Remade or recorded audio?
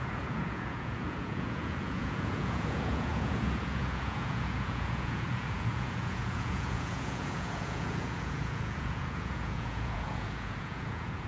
remade